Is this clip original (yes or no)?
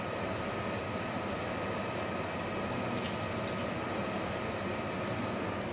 yes